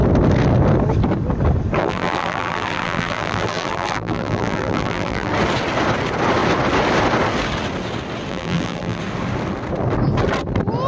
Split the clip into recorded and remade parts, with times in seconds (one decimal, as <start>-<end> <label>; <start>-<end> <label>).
0.0-1.8 recorded; 1.8-5.3 remade; 5.3-8.3 recorded; 8.3-9.0 remade; 9.0-10.9 recorded